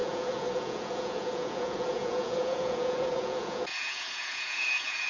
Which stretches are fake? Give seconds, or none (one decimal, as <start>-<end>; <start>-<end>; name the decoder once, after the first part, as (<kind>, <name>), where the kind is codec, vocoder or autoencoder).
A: 0.0-5.1 (vocoder, Vocos)